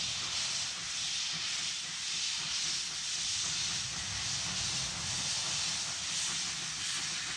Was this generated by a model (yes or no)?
no